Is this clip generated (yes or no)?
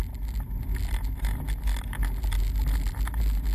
no